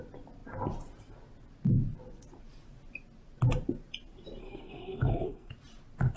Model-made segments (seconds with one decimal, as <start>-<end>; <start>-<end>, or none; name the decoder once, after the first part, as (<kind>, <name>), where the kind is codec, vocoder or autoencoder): 4.4-5.5 (codec, SNAC)